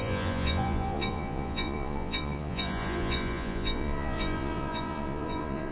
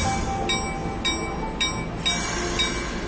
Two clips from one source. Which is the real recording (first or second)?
second